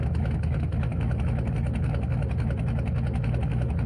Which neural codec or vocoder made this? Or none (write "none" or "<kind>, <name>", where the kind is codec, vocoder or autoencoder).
autoencoder, DAC-VAE